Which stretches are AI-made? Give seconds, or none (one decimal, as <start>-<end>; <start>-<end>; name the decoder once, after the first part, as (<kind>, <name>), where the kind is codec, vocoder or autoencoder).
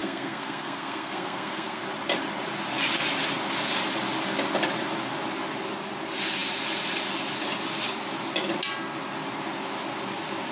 0.0-1.8 (codec, SNAC)